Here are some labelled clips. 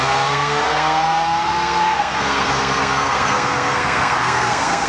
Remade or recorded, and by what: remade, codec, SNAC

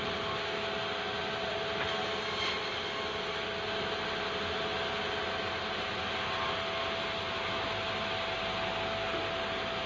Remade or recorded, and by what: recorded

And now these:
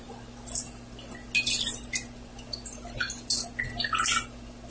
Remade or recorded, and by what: recorded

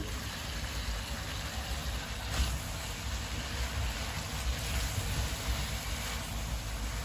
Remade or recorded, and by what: recorded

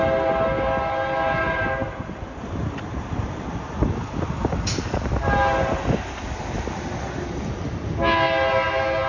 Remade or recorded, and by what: recorded